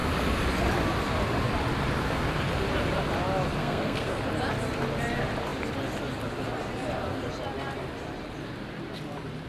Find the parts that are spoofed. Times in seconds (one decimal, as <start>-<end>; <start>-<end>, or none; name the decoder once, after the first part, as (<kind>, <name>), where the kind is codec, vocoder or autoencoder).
3.6-4.2 (codec, SNAC)